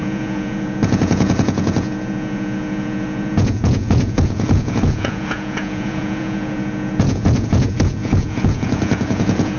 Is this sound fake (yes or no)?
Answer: yes